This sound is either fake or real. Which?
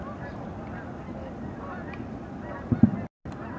real